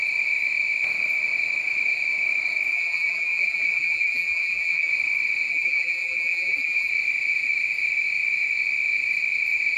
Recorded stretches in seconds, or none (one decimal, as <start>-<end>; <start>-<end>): 0.0-2.7; 4.9-5.5; 6.9-9.8